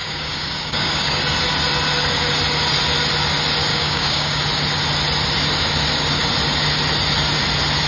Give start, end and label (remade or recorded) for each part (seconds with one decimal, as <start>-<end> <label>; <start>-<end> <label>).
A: 0.0-1.2 remade; 1.2-3.7 recorded; 3.7-4.4 remade; 4.4-7.9 recorded